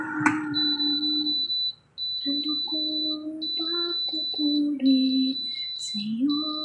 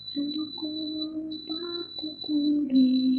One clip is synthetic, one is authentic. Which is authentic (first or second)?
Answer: first